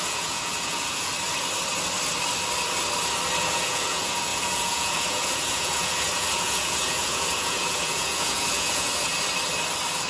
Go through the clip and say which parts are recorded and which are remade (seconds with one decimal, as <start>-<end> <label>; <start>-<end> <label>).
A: 0.0-1.1 remade; 1.1-3.4 recorded; 3.4-9.1 remade; 9.1-10.1 recorded

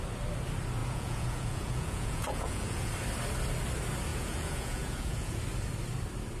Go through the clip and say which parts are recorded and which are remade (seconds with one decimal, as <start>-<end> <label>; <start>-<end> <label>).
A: 0.0-0.8 recorded; 0.8-2.9 remade; 2.9-4.1 recorded; 4.1-5.4 remade; 5.4-6.4 recorded

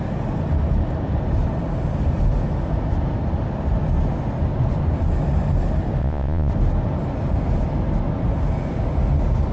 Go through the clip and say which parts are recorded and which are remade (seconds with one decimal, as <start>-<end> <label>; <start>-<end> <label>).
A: 0.0-6.0 recorded; 6.0-6.5 remade; 6.5-9.5 recorded

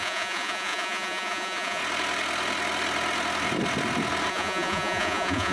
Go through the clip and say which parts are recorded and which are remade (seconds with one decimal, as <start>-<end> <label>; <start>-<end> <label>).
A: 0.0-1.8 remade; 1.8-4.3 recorded; 4.3-5.5 remade

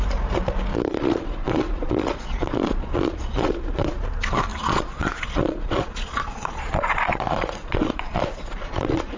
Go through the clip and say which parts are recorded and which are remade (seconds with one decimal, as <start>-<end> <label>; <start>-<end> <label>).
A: 0.0-0.7 recorded; 0.7-4.0 remade; 4.0-4.5 recorded; 4.5-9.2 remade

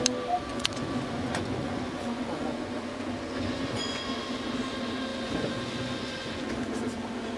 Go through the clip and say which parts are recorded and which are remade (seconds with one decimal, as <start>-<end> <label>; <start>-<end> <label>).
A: 0.0-0.5 recorded; 0.5-4.1 remade; 4.1-5.1 recorded; 5.1-6.5 remade; 6.5-7.4 recorded

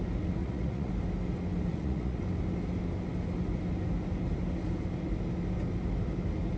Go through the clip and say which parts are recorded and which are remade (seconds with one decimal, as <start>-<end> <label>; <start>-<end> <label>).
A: 0.0-0.4 recorded; 0.4-0.9 remade; 0.9-1.7 recorded; 1.7-2.2 remade; 2.2-6.6 recorded